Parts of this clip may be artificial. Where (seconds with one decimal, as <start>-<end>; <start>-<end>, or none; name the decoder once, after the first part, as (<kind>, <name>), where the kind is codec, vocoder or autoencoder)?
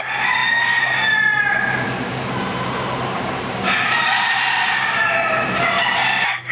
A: none